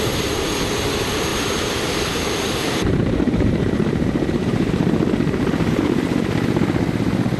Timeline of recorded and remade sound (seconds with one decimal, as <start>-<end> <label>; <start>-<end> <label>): 0.0-1.3 recorded; 1.3-5.7 remade; 5.7-7.4 recorded